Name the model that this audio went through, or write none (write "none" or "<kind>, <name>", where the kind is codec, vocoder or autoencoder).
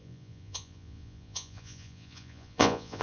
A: vocoder, Vocos